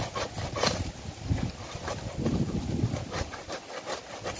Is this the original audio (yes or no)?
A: yes